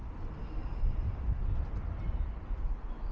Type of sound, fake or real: real